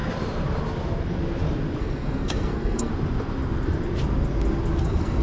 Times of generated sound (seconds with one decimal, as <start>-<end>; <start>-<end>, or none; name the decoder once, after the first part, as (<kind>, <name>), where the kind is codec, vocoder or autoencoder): 1.8-2.9 (codec, SNAC); 4.8-5.2